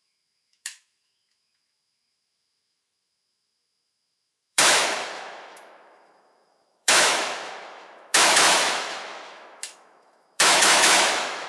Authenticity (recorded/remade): remade